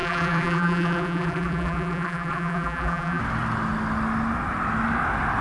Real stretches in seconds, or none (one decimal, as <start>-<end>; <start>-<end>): 3.2-5.4

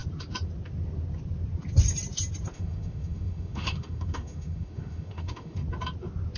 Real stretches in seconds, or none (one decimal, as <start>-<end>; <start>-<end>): 0.0-2.5; 5.6-6.4

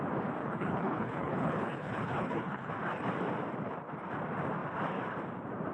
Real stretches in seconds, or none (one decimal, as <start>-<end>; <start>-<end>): 0.0-0.4; 2.7-5.7

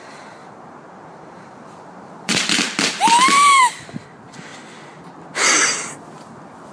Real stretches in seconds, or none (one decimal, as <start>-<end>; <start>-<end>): 0.0-0.4; 3.6-6.7